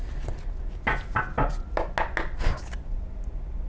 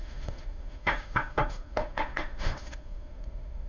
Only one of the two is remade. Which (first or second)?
second